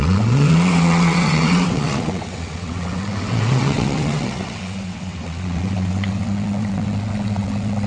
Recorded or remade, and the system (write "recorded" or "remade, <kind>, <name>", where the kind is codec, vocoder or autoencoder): remade, vocoder, WaveNeXt